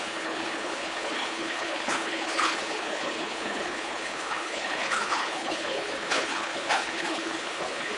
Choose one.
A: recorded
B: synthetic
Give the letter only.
B